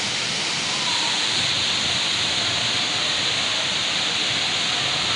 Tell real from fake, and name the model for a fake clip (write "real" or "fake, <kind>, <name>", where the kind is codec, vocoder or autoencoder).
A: real